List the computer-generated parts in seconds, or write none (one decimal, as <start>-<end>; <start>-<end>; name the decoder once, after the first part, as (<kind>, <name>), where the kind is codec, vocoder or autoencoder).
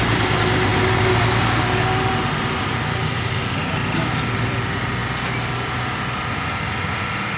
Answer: none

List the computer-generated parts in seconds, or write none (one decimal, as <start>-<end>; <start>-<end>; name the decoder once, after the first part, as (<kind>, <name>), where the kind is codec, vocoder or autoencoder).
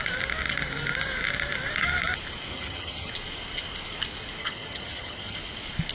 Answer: 2.5-3.1 (vocoder, HiFi-GAN); 4.4-5.4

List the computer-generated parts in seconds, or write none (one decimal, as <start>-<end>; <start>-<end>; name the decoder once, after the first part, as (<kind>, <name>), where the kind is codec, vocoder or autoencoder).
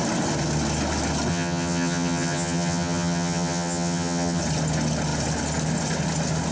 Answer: 1.3-4.4 (vocoder, HiFi-GAN)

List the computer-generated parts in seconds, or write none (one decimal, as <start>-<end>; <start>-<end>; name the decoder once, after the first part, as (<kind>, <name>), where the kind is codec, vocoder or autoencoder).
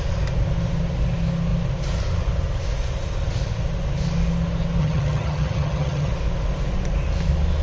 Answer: 4.8-6.1 (vocoder, HiFi-GAN)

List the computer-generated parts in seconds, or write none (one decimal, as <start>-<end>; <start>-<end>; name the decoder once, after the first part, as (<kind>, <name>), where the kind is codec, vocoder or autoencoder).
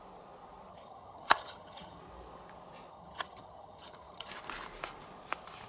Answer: 0.7-2.0 (vocoder, HiFi-GAN); 2.9-4.3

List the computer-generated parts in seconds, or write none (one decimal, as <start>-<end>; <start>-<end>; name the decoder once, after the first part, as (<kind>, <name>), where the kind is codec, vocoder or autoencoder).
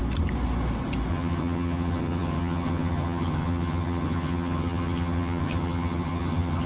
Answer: 1.1-6.7 (vocoder, HiFi-GAN)